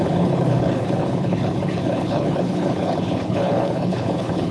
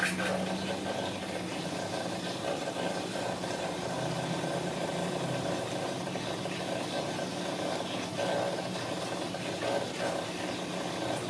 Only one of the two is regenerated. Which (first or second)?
first